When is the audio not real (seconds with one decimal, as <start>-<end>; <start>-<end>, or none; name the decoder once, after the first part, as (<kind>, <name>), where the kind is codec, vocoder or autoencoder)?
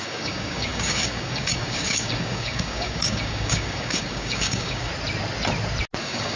0.0-4.9 (codec, DAC); 6.0-6.4